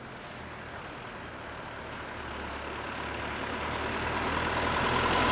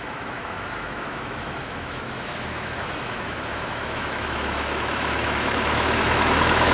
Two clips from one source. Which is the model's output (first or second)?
second